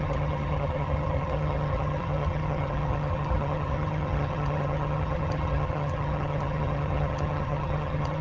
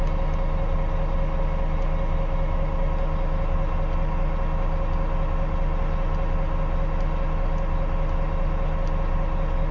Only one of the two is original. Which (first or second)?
second